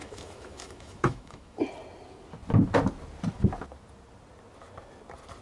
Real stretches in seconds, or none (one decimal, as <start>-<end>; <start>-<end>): 1.6-5.4